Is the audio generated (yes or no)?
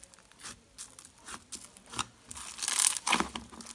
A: no